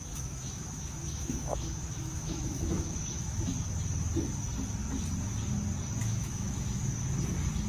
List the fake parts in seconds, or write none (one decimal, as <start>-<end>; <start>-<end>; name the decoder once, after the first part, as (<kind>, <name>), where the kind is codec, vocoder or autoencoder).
0.0-3.5 (autoencoder, DAC-VAE); 6.0-6.8